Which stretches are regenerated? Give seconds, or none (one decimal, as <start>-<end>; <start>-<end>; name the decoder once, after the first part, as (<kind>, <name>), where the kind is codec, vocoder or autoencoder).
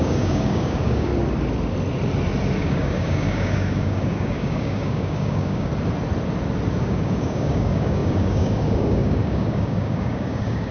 0.0-1.1 (codec, DAC); 2.6-5.7; 6.8-10.7